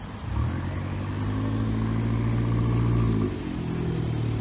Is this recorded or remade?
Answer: recorded